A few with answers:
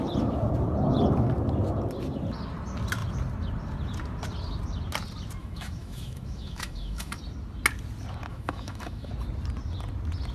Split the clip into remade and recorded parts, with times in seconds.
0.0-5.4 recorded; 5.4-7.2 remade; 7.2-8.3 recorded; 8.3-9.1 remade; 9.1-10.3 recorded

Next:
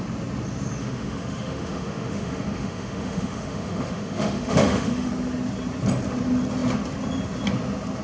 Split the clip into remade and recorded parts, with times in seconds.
0.0-0.8 recorded; 0.8-5.1 remade; 5.1-8.0 recorded

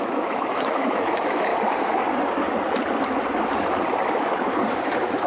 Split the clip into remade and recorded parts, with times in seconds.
0.0-1.5 remade; 1.5-4.7 recorded; 4.7-5.3 remade

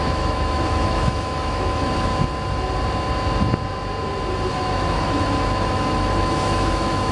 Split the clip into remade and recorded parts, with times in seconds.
0.0-2.1 remade; 2.1-4.5 recorded; 4.5-7.1 remade

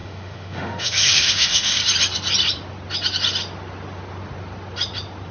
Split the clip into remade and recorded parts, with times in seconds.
0.0-1.8 remade; 1.8-5.3 recorded

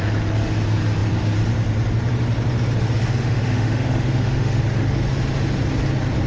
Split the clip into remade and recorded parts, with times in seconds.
0.0-3.2 recorded; 3.2-4.6 remade; 4.6-6.3 recorded